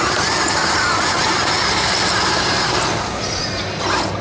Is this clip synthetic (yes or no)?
no